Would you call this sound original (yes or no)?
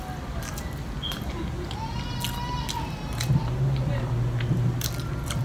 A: yes